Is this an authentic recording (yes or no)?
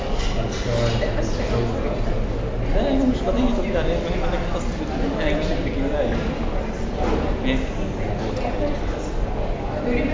yes